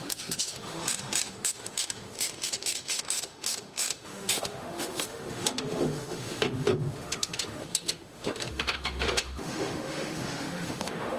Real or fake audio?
fake